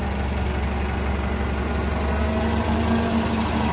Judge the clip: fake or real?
real